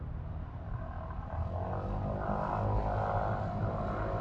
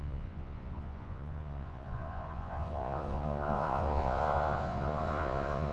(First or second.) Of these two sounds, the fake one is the second